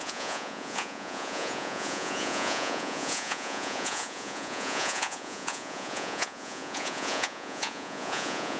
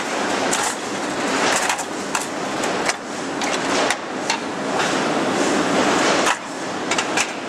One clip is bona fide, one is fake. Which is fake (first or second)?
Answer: first